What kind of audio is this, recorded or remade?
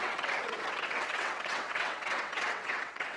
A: remade